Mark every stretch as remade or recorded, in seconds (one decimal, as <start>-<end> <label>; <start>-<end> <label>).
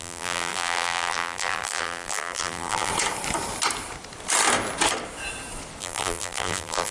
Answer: 0.0-2.9 remade; 2.9-5.8 recorded; 5.8-6.9 remade